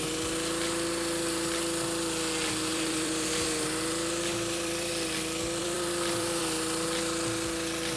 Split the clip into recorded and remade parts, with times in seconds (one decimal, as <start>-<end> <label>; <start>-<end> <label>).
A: 0.0-2.7 recorded; 2.7-4.9 remade; 4.9-5.6 recorded; 5.6-6.4 remade; 6.4-8.0 recorded